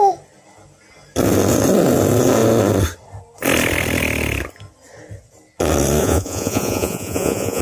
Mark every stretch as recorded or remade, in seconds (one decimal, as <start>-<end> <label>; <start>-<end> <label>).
0.0-6.0 recorded; 6.0-7.6 remade